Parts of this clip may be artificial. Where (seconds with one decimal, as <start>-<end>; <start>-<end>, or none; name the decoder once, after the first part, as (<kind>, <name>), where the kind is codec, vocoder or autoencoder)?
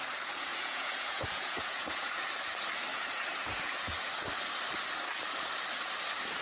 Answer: 0.5-2.3 (vocoder, Vocos); 2.9-4.1